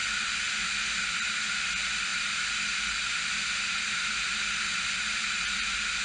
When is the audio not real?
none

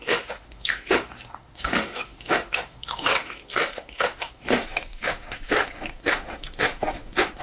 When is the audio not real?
0.0-7.4 (autoencoder, DAC-VAE)

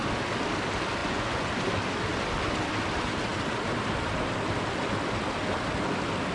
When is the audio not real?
1.0-1.5 (vocoder, Vocos)

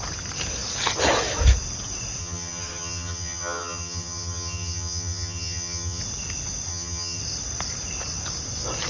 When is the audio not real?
2.2-6.0 (vocoder, HiFi-GAN); 6.7-7.2

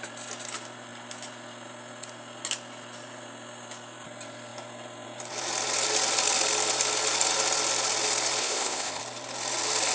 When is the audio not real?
8.4-9.0 (codec, ZipCodec)